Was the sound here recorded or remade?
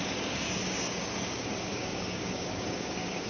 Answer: remade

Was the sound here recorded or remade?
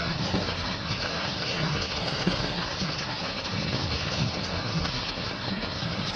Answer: remade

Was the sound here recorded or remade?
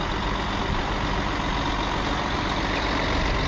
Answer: recorded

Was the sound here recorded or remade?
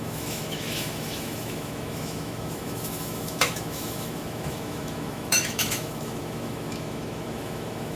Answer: remade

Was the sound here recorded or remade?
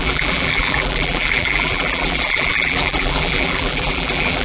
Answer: remade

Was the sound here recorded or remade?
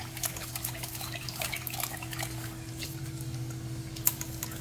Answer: remade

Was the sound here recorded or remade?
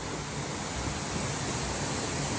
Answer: recorded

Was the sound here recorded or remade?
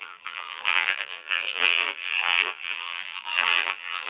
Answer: remade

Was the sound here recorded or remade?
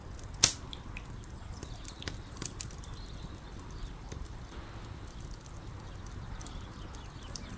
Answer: recorded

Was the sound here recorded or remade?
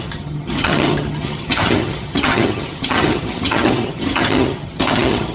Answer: remade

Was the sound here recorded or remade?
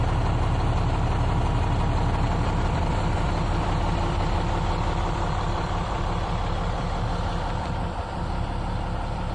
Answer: remade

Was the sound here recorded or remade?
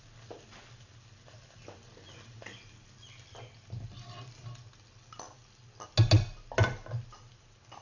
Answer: recorded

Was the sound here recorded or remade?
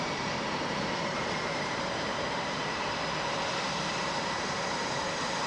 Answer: remade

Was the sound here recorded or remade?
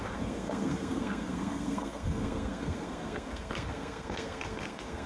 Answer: remade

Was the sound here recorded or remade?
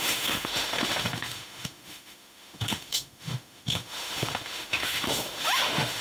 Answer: remade